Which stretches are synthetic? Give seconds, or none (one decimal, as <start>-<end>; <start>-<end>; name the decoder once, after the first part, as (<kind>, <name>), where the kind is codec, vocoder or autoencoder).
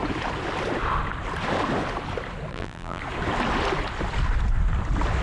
2.5-3.0 (vocoder, BigVGAN v2)